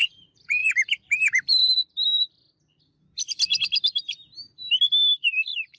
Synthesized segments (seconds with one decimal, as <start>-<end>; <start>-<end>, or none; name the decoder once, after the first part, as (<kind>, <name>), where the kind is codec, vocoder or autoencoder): 0.0-1.6 (vocoder, BigVGAN v2); 5.1-5.8

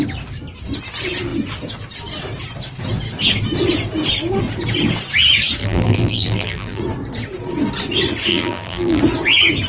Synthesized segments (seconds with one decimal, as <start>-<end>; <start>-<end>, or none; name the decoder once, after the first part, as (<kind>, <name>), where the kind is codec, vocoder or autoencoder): 5.6-6.8 (vocoder, BigVGAN v2); 8.3-9.0

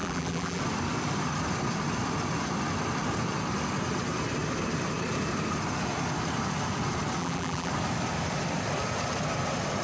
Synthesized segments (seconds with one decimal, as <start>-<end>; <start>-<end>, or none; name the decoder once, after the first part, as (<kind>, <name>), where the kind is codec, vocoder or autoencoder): 0.0-0.6 (vocoder, BigVGAN v2); 7.2-7.7

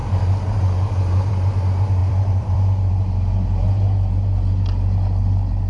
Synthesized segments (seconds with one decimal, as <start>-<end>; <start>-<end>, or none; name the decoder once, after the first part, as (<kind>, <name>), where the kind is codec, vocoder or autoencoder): 2.0-2.9 (vocoder, BigVGAN v2)

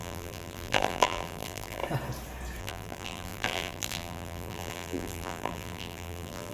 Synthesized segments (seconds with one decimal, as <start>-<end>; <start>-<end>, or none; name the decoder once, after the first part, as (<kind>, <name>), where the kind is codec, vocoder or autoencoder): 0.0-1.8 (vocoder, BigVGAN v2); 2.6-6.5

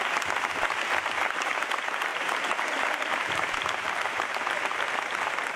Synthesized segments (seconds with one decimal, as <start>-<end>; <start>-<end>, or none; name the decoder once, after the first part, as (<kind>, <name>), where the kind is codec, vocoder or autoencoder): 2.1-4.5 (vocoder, BigVGAN v2)